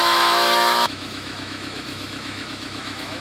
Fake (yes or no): yes